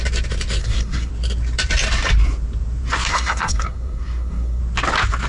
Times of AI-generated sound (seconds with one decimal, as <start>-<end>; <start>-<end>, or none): 0.6-1.1; 3.1-4.6